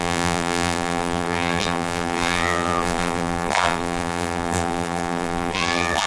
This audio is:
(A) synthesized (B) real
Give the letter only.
A